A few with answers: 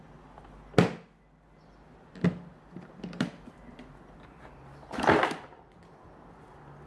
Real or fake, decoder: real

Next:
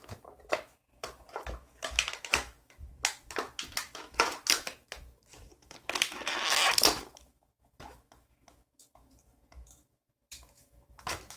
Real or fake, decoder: fake, autoencoder, DAC-VAE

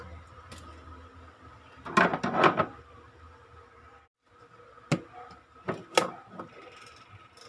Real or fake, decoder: real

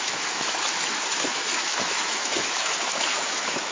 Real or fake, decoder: fake, autoencoder, DAC-VAE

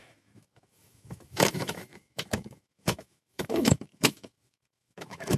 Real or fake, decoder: fake, autoencoder, DAC-VAE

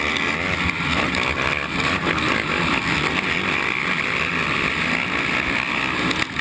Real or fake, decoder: real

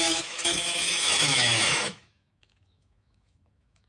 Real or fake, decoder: fake, autoencoder, DAC-VAE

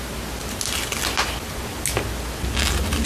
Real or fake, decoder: real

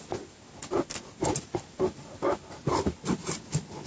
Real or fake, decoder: real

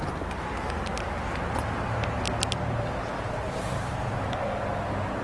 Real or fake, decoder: real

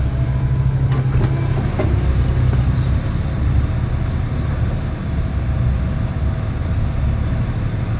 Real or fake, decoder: real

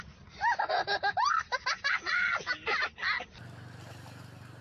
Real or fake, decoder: real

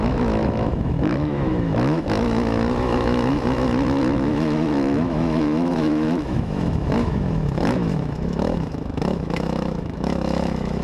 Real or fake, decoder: fake, autoencoder, DAC-VAE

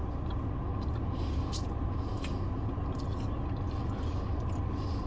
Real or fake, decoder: real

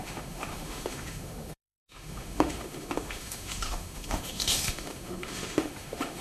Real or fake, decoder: fake, autoencoder, DAC-VAE